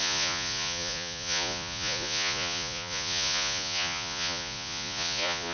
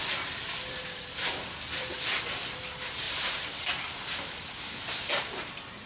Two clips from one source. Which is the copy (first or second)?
first